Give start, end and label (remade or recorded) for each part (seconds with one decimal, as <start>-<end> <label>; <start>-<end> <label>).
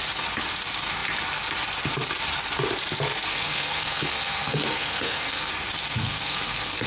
0.0-3.3 recorded; 3.3-5.5 remade; 5.5-5.9 recorded; 5.9-6.9 remade